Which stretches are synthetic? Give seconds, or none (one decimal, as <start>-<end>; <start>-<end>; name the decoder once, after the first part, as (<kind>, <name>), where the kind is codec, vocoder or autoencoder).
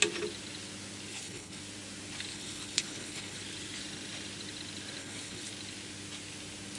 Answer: 1.1-1.6 (codec, HILCodec); 2.3-3.4; 5.0-5.5